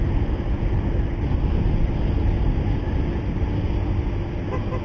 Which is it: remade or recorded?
recorded